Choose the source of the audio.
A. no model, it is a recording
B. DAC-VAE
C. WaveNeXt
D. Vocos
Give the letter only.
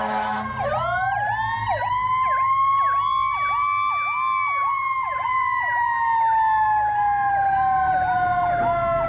A